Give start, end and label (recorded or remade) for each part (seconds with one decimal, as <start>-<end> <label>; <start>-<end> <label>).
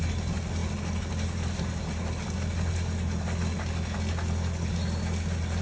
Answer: 0.0-5.6 recorded